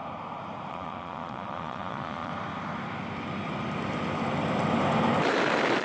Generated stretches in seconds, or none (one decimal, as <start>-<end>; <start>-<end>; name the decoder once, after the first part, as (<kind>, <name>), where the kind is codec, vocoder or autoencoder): 0.7-2.3 (vocoder, Vocos)